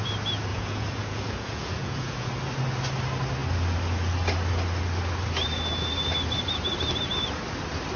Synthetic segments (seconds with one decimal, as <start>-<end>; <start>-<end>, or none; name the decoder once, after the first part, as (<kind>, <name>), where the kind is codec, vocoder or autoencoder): 0.5-2.3 (vocoder, Vocos)

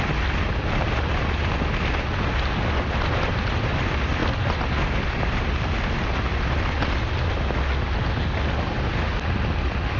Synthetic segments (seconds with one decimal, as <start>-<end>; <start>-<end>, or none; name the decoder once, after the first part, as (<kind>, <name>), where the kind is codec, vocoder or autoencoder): none

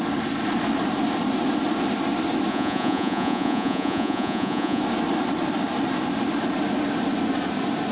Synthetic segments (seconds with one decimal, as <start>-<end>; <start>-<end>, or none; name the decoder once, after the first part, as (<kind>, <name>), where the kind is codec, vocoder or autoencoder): 2.5-4.8 (vocoder, Vocos)

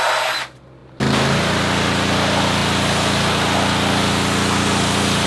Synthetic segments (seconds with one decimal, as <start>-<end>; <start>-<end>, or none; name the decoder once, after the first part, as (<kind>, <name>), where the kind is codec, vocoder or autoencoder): none

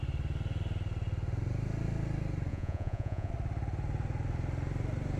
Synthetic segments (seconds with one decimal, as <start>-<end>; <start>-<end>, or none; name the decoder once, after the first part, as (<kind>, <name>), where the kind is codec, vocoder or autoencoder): 2.5-3.3 (vocoder, Vocos)